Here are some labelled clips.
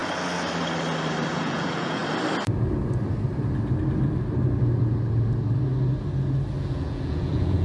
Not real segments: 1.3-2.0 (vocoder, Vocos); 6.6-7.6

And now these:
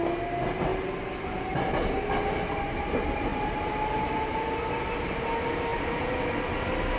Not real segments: none

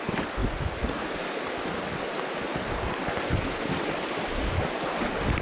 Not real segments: none

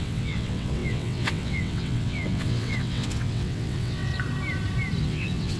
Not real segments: 0.0-4.1 (vocoder, WaveNeXt); 5.0-5.6

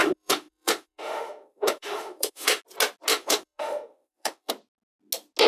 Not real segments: 0.0-2.6 (autoencoder, DAC-VAE); 3.1-4.5

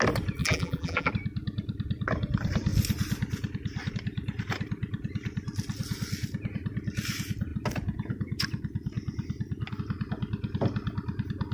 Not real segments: 0.4-1.1 (vocoder, BigVGAN v2)